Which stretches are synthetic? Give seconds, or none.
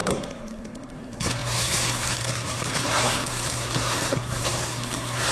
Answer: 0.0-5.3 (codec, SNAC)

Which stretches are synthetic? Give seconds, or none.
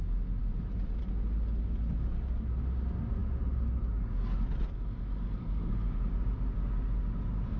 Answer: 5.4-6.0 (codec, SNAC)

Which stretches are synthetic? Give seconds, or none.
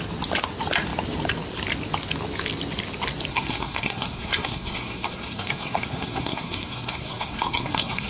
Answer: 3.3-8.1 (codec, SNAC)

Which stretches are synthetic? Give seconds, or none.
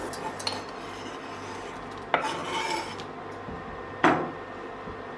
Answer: none